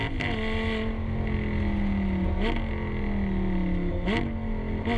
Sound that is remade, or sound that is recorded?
recorded